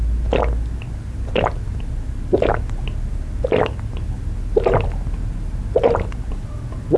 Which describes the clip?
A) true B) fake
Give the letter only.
A